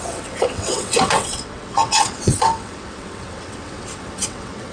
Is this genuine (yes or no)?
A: no